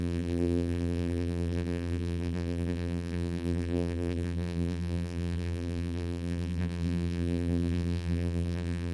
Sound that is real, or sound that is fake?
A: fake